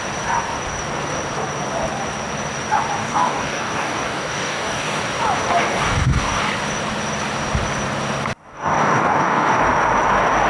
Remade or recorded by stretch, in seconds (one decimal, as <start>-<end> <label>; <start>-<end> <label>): 0.0-3.0 recorded; 3.0-5.0 remade; 5.0-5.6 recorded; 5.6-6.4 remade; 6.4-8.5 recorded; 8.5-9.6 remade; 9.6-10.5 recorded